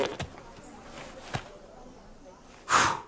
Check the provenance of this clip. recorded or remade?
recorded